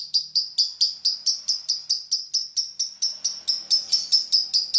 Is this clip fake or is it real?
real